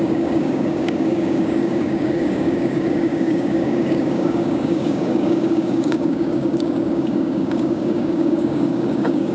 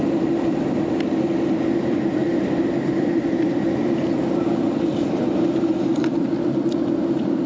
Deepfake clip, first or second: first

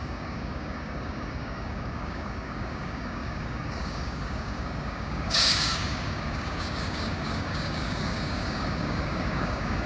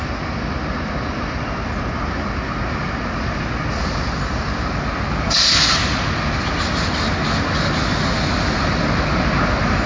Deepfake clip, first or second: first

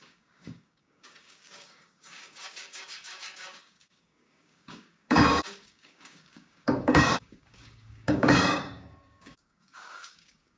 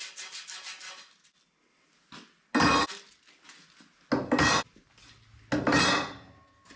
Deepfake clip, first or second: first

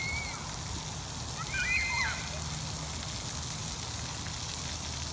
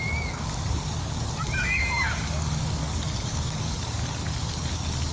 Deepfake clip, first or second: second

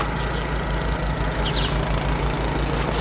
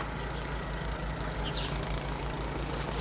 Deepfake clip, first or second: second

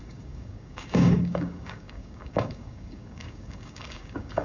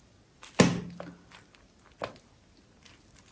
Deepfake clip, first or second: first